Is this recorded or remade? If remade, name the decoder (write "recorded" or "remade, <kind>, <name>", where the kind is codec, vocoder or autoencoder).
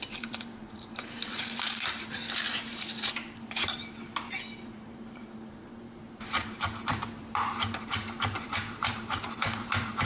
remade, vocoder, BigVGAN v2